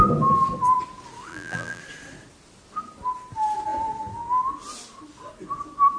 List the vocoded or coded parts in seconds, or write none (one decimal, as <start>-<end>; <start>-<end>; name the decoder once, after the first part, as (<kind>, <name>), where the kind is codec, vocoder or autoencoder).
1.3-1.8 (vocoder, BigVGAN v2)